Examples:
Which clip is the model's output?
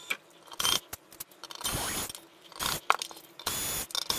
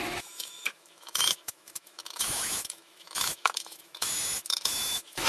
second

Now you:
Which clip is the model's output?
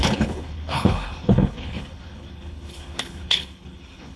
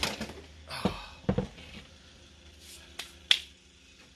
first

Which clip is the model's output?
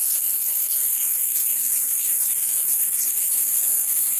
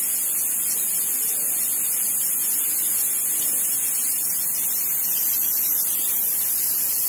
first